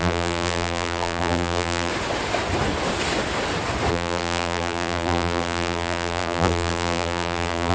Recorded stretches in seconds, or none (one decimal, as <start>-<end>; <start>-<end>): 1.9-3.9